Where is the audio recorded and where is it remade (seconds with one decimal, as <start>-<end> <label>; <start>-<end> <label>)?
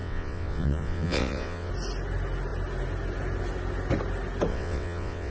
0.0-1.7 remade; 1.7-4.5 recorded; 4.5-5.3 remade